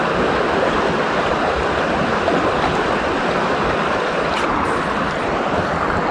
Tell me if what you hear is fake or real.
real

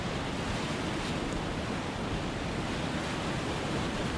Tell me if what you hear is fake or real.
real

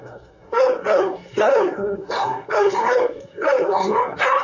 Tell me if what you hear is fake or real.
fake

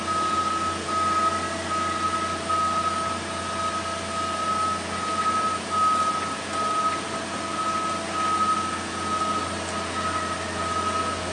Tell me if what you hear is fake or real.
real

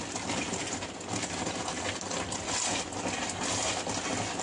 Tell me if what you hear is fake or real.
real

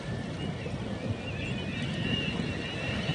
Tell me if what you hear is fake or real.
real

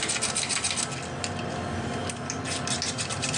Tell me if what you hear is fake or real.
real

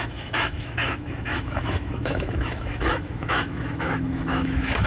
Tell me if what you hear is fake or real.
fake